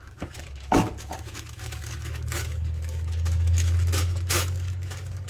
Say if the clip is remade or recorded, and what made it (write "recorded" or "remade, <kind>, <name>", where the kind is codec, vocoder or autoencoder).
remade, codec, DAC